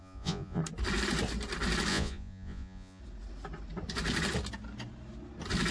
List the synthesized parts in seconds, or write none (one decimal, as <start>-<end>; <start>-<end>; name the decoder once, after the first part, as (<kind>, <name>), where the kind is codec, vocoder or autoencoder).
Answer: 0.0-0.6 (vocoder, Vocos); 1.9-3.0

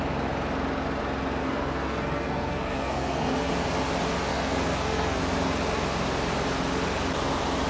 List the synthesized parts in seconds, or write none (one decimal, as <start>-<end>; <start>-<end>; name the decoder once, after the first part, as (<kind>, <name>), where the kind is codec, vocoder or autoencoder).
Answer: 1.4-3.5 (codec, SNAC); 4.3-5.2